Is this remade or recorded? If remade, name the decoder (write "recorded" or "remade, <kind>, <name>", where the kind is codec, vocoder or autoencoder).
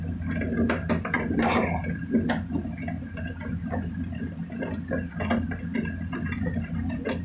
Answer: recorded